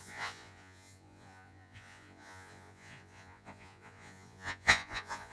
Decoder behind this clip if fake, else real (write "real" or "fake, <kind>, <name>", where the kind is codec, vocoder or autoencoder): fake, vocoder, Vocos